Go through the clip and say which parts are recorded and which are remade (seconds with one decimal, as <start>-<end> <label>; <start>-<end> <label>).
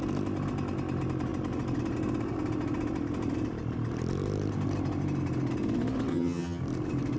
0.0-6.1 recorded; 6.1-6.6 remade; 6.6-7.2 recorded